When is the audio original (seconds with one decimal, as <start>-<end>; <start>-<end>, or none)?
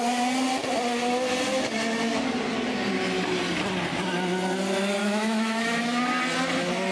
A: 0.0-5.0; 6.0-6.9